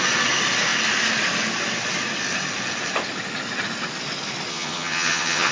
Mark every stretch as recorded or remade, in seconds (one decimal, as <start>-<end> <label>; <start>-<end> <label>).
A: 0.0-4.5 recorded; 4.5-5.5 remade